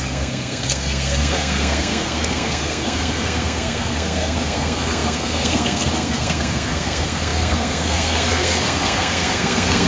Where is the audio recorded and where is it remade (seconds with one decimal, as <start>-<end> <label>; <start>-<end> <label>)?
0.0-9.9 remade